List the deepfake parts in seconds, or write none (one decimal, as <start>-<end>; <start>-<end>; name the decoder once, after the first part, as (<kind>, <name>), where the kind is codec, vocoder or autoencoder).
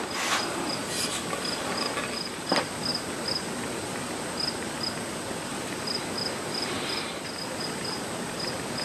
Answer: none